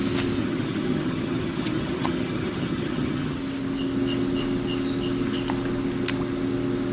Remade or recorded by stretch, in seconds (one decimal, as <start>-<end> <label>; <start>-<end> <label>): 0.0-0.4 recorded; 0.4-3.4 remade; 3.4-6.9 recorded

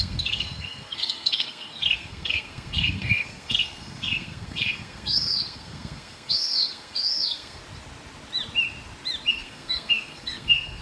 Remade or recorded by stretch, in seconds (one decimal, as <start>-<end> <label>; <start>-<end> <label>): 0.0-7.6 remade; 7.6-9.3 recorded; 9.3-10.8 remade

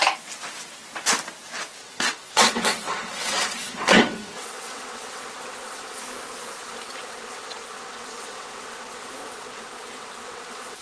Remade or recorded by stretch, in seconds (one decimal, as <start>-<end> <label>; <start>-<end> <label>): 0.0-1.8 recorded; 1.8-6.0 remade; 6.0-6.6 recorded; 6.6-10.8 remade